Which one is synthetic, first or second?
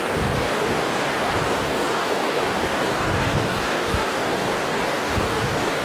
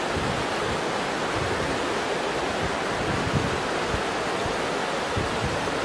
first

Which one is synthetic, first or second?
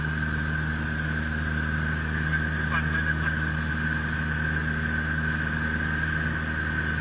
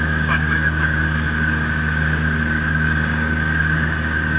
second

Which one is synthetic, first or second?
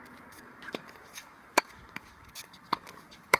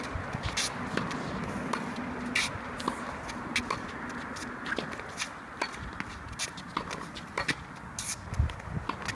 first